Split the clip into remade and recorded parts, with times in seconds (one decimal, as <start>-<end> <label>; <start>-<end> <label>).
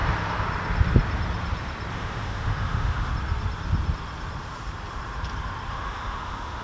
0.0-1.9 recorded; 1.9-3.1 remade; 3.1-5.7 recorded; 5.7-6.6 remade